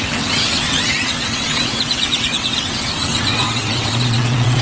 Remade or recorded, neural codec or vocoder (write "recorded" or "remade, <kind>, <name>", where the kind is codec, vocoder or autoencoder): remade, vocoder, WaveNeXt